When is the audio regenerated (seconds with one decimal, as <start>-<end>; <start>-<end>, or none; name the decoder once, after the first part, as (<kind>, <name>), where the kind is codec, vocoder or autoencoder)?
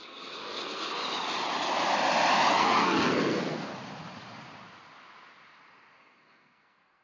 0.0-1.0 (codec, SNAC); 2.5-3.7; 6.0-7.0